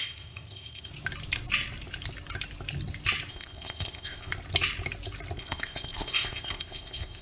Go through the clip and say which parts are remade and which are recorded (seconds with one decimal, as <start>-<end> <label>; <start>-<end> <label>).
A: 0.0-0.9 remade; 0.9-3.3 recorded; 3.3-4.3 remade; 4.3-5.4 recorded; 5.4-7.2 remade